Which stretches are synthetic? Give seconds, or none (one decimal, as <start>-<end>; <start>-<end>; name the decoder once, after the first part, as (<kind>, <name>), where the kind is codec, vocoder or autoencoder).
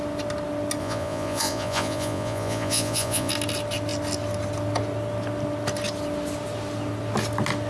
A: 0.8-3.3 (vocoder, Vocos)